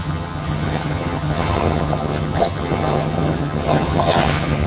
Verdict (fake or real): fake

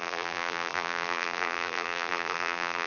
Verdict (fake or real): fake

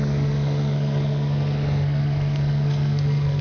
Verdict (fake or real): fake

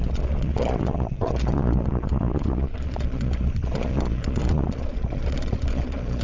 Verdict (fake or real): fake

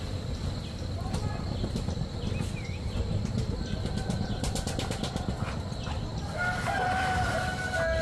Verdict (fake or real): real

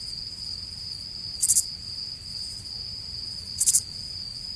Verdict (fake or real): real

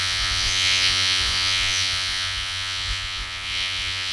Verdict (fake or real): fake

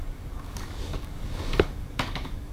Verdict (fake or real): fake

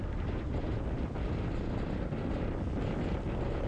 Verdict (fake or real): real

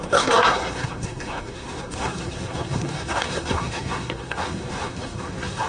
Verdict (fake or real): fake